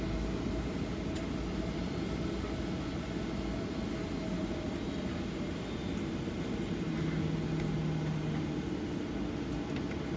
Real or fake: real